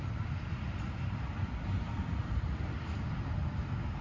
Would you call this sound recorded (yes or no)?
yes